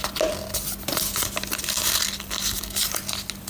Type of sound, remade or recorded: recorded